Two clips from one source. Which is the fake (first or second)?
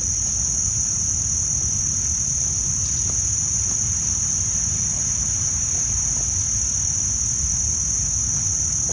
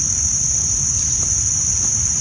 second